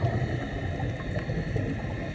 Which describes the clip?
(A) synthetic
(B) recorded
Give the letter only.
B